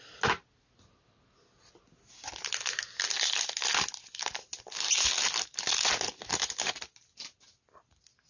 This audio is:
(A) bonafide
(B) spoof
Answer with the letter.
A